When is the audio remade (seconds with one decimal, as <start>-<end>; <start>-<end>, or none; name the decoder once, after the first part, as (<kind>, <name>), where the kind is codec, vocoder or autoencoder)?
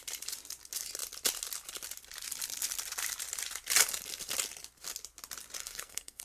5.6-6.2 (codec, SNAC)